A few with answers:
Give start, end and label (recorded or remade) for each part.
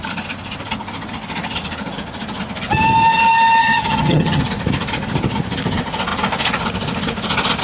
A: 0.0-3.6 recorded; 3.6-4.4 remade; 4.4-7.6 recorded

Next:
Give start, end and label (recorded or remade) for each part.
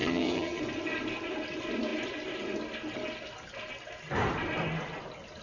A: 0.0-0.6 remade; 0.6-5.4 recorded